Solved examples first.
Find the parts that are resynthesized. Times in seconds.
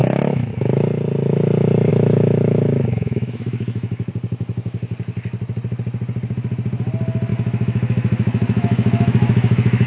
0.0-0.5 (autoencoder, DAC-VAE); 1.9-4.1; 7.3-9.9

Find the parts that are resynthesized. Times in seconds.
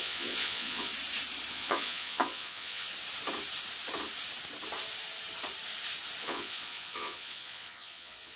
0.0-0.9 (vocoder, Vocos); 1.5-2.9; 6.2-8.4